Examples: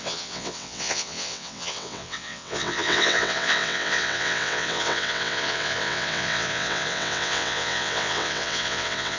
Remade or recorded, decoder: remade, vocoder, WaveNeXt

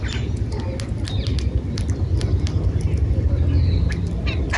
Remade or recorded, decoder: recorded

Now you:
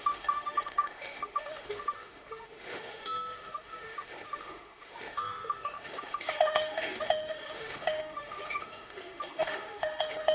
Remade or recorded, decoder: remade, autoencoder, DAC-VAE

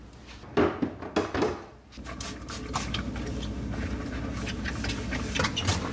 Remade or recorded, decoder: recorded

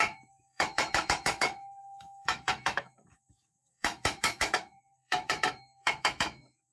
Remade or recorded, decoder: remade, autoencoder, DAC-VAE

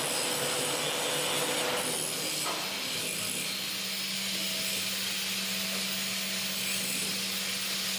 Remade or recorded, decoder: recorded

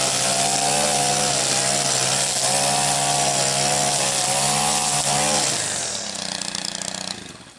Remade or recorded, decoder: recorded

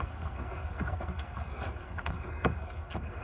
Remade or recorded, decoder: remade, codec, SNAC